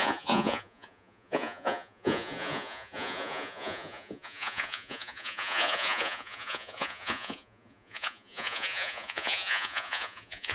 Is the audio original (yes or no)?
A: no